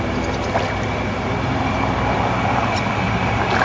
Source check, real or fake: real